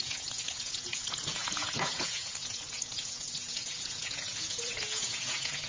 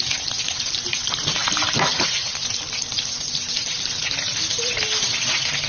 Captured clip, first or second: second